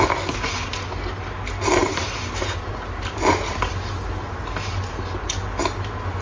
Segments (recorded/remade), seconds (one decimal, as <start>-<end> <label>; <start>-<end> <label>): 0.0-6.2 recorded